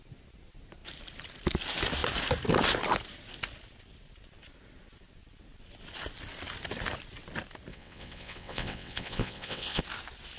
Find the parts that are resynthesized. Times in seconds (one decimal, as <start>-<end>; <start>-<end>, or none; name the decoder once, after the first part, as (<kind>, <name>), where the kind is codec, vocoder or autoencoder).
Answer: 7.7-9.8 (vocoder, WaveNeXt)